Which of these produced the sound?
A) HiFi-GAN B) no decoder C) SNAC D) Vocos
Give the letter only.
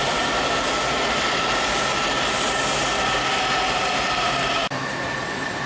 B